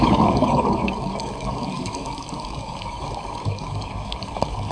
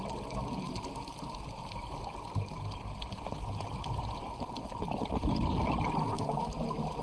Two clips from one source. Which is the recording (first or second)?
second